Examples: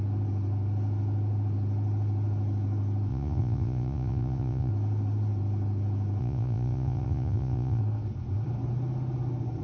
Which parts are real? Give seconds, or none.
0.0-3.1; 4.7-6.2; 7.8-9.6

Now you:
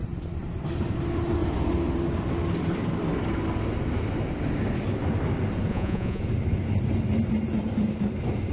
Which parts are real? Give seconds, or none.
0.0-5.7; 6.2-8.5

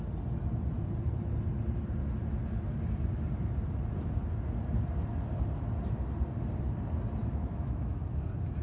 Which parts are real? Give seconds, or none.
0.0-7.2; 8.0-8.6

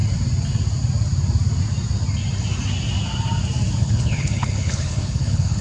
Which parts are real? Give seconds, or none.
0.0-3.8

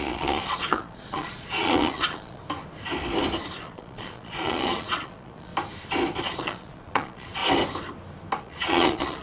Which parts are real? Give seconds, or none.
2.4-3.6; 5.5-6.2; 7.4-8.4

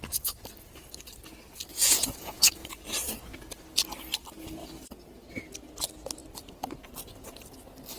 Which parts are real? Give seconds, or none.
0.0-1.7; 2.8-4.6; 5.1-8.0

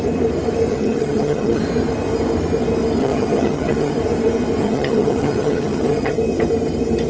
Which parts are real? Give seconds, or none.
0.0-0.7; 1.6-3.0; 3.9-4.6; 6.2-7.1